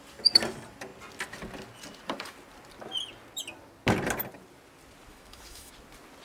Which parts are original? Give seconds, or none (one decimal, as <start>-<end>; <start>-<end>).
0.0-5.1; 5.7-6.2